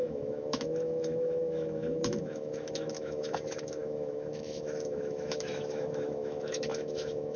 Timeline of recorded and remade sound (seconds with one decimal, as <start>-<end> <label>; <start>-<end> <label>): 0.0-7.4 remade